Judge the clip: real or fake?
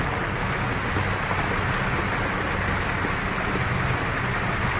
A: real